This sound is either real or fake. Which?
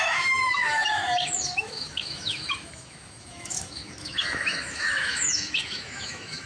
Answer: fake